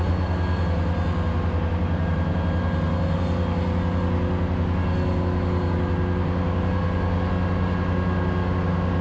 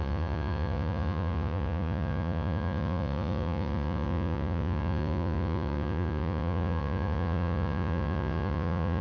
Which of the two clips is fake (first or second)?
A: second